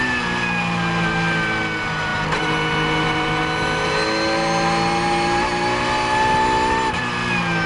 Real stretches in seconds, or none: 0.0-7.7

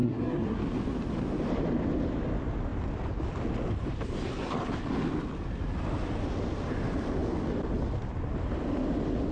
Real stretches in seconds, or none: 0.6-9.3

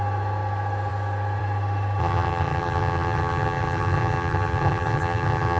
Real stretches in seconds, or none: 0.0-2.0